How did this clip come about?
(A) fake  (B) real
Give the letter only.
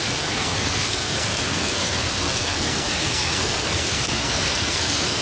A